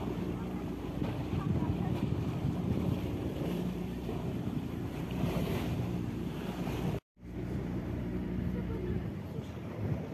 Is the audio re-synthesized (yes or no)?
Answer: yes